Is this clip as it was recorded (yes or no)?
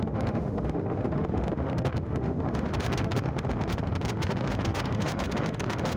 no